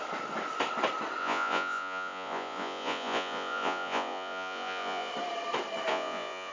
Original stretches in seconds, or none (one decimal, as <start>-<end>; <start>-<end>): 0.0-1.2; 5.1-5.9